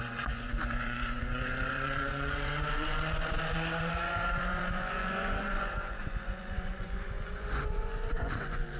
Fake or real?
fake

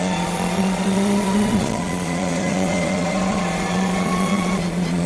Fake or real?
fake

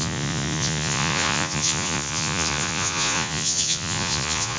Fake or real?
fake